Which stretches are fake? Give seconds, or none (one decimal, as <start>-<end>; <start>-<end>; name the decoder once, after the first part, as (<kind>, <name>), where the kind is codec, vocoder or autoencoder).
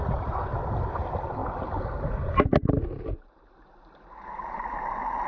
none